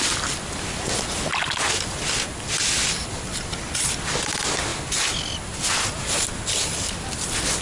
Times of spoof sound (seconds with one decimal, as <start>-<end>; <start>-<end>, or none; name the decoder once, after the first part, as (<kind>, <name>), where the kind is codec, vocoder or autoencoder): none